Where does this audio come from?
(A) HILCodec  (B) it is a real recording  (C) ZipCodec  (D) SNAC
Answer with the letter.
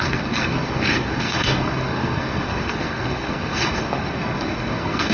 D